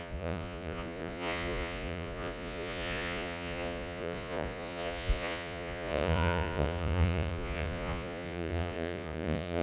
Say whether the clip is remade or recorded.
remade